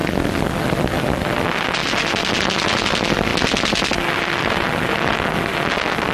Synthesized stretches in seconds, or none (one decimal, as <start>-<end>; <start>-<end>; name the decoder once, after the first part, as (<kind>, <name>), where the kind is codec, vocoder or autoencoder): none